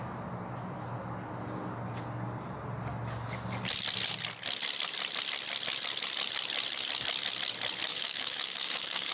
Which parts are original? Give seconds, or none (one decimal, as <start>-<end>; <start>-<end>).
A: 0.0-7.9